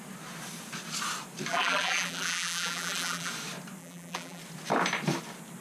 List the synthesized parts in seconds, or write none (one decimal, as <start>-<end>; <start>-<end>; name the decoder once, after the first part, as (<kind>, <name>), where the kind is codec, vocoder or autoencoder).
1.5-3.3 (vocoder, BigVGAN v2); 3.8-4.4

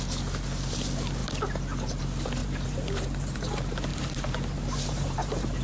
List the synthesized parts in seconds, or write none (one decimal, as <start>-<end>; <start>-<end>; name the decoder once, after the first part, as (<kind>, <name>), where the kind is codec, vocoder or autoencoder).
2.4-3.5 (vocoder, BigVGAN v2); 3.9-5.6

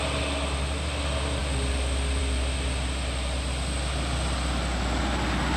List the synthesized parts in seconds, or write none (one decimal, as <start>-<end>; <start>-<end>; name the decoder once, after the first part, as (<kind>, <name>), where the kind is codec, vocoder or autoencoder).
none

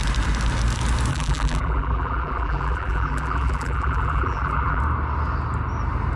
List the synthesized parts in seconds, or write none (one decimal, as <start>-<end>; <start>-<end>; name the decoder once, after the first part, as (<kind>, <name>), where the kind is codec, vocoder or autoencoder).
1.1-4.8 (vocoder, BigVGAN v2)

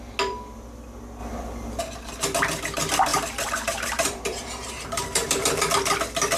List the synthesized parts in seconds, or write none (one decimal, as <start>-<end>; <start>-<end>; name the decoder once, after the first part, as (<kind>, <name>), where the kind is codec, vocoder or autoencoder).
3.1-5.7 (vocoder, BigVGAN v2)

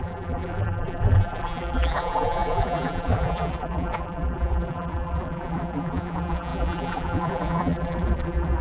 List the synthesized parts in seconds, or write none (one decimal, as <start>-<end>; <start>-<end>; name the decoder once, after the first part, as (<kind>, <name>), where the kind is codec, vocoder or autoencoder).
0.0-8.6 (vocoder, BigVGAN v2)

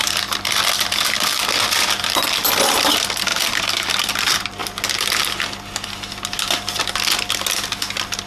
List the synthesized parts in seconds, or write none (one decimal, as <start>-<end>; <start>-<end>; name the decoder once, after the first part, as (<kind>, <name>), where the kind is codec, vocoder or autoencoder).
0.0-0.6 (vocoder, BigVGAN v2); 3.3-4.0

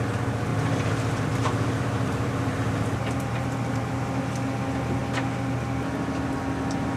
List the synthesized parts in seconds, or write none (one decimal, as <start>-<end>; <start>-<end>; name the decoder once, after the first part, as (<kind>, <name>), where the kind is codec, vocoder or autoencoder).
0.5-3.9 (vocoder, BigVGAN v2)